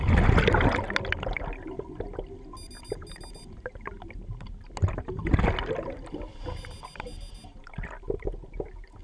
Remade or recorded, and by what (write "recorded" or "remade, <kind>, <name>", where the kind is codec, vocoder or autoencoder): recorded